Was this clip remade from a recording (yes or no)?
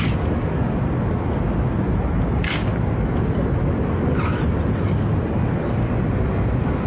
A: no